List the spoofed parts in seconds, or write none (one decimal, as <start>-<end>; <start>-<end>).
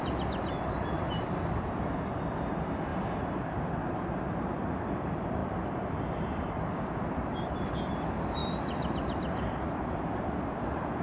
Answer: 0.0-2.9; 3.4-3.8; 4.8-11.0